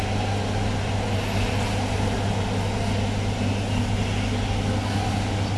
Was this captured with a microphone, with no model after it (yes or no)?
yes